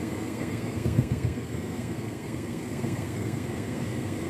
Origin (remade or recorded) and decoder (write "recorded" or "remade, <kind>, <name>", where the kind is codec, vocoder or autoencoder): remade, codec, SNAC